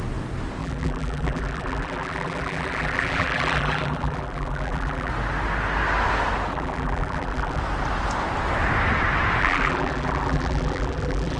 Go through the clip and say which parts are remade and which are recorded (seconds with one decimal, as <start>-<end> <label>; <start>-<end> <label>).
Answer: 0.0-0.6 recorded; 0.6-5.1 remade; 5.1-6.5 recorded; 6.5-7.6 remade; 7.6-9.4 recorded; 9.4-11.4 remade